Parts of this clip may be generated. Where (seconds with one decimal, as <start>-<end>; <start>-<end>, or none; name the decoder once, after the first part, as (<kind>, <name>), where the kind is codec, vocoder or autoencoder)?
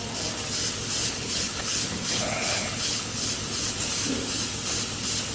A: 1.0-3.3 (codec, HILCodec)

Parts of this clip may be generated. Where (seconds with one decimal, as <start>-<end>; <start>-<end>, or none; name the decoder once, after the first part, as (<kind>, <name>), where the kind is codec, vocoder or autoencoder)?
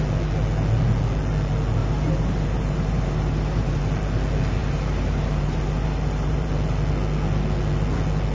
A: 1.8-3.8 (vocoder, BigVGAN v2); 4.6-6.5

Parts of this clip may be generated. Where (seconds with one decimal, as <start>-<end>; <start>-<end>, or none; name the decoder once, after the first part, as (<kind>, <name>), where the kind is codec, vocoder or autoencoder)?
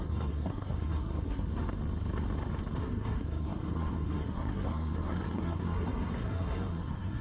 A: 0.0-1.5 (codec, SNAC); 2.8-7.2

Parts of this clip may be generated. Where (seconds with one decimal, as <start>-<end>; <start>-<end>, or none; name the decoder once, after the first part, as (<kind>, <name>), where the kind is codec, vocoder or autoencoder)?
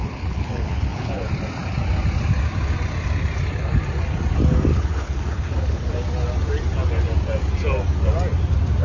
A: 0.0-1.2 (codec, HILCodec); 4.7-5.9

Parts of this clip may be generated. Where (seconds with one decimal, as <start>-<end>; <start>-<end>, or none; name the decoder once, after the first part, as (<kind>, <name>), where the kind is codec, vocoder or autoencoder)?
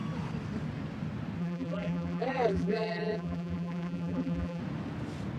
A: 1.4-4.6 (vocoder, BigVGAN v2)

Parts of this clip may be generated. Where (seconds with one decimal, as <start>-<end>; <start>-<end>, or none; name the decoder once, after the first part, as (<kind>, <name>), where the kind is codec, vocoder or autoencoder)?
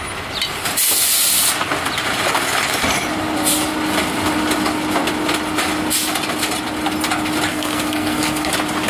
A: 7.5-8.5 (codec, SNAC)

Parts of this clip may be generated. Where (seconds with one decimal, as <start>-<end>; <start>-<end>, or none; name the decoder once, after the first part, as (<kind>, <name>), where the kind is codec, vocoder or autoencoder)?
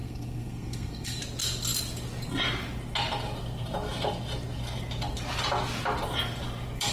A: 0.0-1.2 (codec, SNAC)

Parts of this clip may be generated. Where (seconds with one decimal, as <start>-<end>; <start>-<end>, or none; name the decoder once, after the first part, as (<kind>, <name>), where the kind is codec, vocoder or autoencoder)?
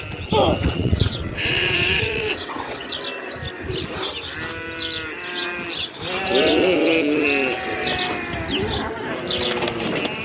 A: 0.6-2.9 (vocoder, WaveNeXt)